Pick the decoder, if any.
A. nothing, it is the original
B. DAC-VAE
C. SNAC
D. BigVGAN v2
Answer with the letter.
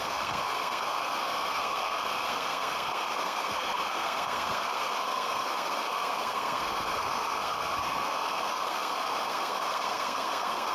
C